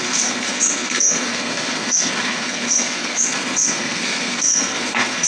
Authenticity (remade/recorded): remade